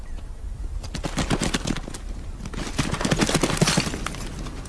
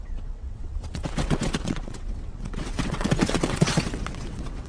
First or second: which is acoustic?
first